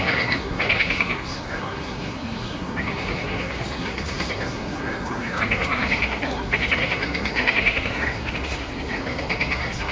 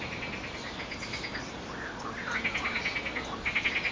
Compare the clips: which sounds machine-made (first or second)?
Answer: first